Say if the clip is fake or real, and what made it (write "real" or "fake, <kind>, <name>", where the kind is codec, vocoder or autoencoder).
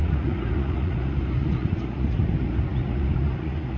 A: fake, vocoder, Vocos